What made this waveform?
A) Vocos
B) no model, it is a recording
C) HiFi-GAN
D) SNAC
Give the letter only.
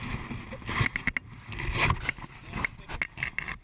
B